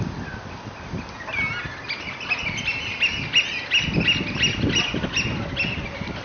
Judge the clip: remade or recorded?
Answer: recorded